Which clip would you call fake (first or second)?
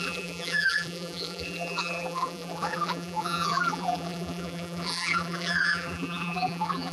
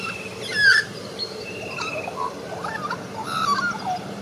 first